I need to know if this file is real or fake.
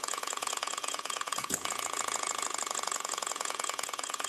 fake